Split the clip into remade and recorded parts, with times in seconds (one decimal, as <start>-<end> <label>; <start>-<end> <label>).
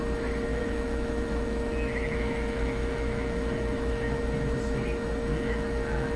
0.0-0.5 recorded; 0.5-4.2 remade; 4.2-5.3 recorded; 5.3-6.2 remade